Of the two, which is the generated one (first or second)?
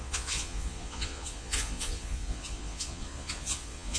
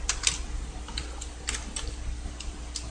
first